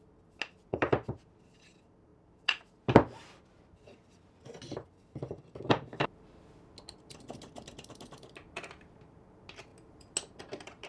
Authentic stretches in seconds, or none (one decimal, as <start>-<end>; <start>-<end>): 0.0-10.9